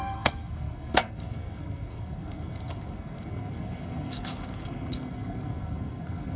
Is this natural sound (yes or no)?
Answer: no